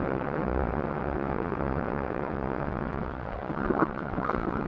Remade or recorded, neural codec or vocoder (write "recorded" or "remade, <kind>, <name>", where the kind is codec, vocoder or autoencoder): remade, vocoder, WaveNeXt